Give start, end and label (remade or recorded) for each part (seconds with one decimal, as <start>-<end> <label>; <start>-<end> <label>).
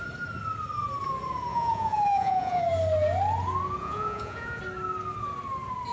0.0-1.5 recorded; 1.5-2.6 remade; 2.6-3.8 recorded; 3.8-4.6 remade; 4.6-5.9 recorded